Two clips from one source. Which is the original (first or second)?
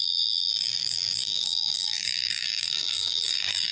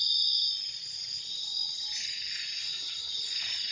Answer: second